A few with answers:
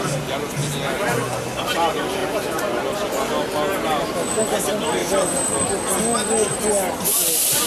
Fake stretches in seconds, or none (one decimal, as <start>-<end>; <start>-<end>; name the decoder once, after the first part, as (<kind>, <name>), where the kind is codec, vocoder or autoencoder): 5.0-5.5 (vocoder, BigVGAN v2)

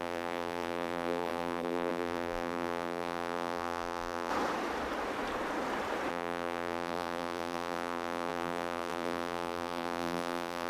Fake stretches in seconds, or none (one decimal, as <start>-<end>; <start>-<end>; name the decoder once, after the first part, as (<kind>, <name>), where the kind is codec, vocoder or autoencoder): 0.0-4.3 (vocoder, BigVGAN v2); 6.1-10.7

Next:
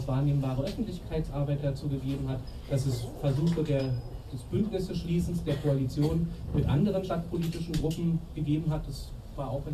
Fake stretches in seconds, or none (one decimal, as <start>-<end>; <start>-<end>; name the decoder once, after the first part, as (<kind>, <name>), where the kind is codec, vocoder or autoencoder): none

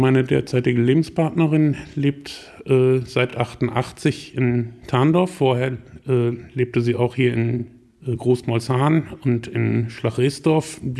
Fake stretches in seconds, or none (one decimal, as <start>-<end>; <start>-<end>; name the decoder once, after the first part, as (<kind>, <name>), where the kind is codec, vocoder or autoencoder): 7.6-8.6 (vocoder, BigVGAN v2)